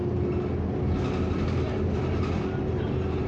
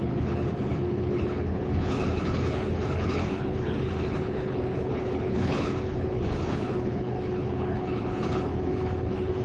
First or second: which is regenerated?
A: second